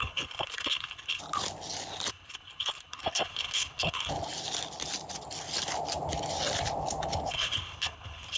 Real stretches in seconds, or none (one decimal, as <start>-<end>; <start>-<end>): 1.2-2.1; 4.1-7.3